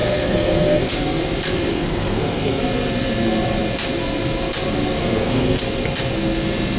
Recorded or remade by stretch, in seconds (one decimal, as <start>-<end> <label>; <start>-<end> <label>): 0.0-0.9 remade; 0.9-1.7 recorded; 1.7-2.6 remade; 2.6-5.0 recorded; 5.0-5.6 remade; 5.6-6.8 recorded